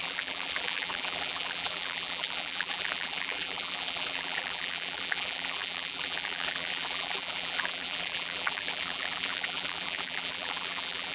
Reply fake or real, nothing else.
fake